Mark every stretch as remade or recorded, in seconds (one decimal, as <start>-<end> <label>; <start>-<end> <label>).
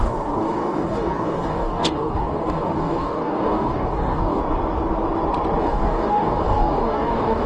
0.0-4.4 remade; 4.4-5.6 recorded; 5.6-7.5 remade